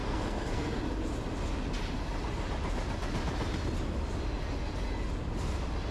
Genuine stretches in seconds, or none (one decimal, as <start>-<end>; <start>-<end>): 0.8-5.9